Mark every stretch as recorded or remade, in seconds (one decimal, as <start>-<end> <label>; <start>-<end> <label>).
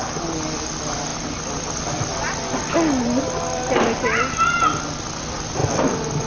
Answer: 0.0-6.3 recorded